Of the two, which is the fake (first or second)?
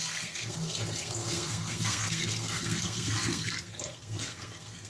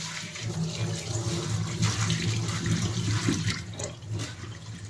first